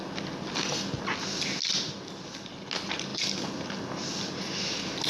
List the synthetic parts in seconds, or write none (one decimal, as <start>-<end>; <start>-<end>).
none